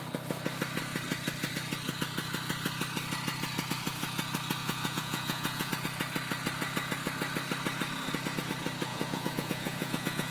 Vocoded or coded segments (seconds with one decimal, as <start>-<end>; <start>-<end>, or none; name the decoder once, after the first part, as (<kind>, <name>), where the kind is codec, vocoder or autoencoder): 4.6-5.7 (vocoder, Vocos); 8.9-10.3